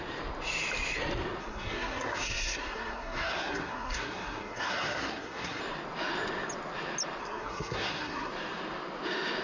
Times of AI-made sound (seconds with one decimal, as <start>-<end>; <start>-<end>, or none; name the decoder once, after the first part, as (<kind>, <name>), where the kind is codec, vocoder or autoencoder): 1.4-5.6 (codec, SNAC); 7.2-8.3